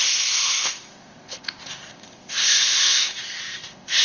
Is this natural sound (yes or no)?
no